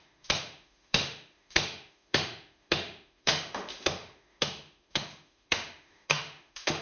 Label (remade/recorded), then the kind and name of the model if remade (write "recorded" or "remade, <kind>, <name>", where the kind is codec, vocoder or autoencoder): remade, autoencoder, DAC-VAE